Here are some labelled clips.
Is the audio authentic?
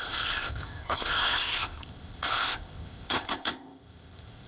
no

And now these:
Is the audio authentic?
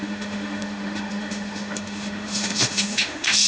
no